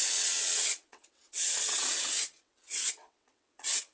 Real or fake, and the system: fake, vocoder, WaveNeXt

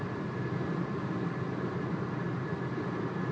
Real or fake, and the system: real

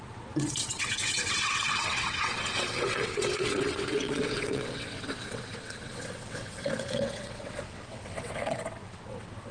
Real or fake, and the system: fake, vocoder, WaveNeXt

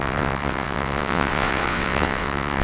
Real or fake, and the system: fake, vocoder, WaveNeXt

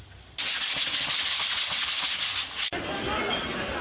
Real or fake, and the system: real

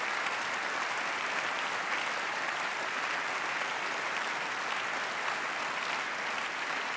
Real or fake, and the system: real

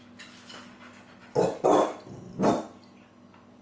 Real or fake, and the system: real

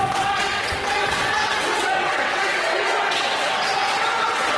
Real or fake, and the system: fake, vocoder, WaveNeXt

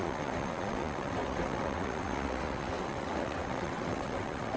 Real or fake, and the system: fake, vocoder, WaveNeXt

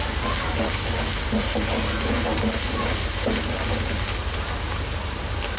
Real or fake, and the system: real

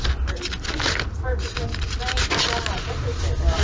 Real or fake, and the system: real